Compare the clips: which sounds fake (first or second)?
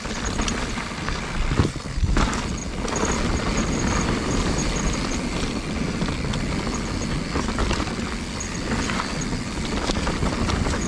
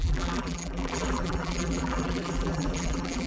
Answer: second